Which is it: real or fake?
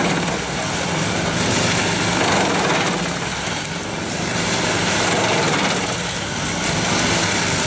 real